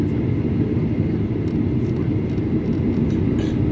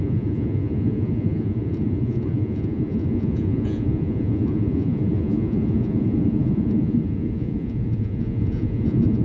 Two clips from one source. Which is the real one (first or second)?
first